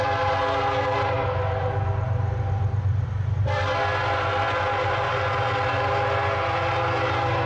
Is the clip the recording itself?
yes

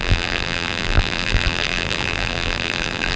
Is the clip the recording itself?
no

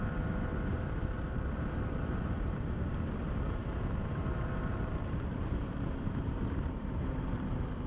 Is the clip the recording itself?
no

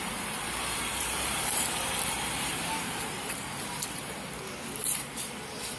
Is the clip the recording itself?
no